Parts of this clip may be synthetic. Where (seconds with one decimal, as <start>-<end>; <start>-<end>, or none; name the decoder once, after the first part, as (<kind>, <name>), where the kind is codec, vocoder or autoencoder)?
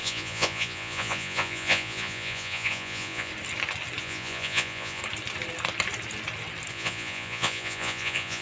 0.0-3.3 (vocoder, Vocos); 4.0-5.0; 6.7-8.4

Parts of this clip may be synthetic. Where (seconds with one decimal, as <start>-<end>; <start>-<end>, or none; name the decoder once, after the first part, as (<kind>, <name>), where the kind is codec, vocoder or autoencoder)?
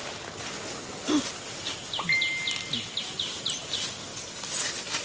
none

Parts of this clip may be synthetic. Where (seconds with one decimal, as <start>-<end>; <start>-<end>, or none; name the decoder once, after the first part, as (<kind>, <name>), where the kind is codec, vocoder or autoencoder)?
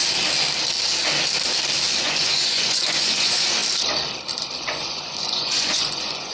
2.0-3.6 (vocoder, Vocos); 4.6-6.3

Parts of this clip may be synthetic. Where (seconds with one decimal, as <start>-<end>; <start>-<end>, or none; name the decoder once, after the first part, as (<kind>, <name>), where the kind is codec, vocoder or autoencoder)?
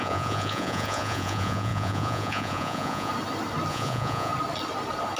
0.0-3.1 (vocoder, Vocos); 3.7-4.3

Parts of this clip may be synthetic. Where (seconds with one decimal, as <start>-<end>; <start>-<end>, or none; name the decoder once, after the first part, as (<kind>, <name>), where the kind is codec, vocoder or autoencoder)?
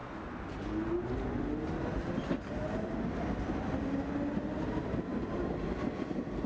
none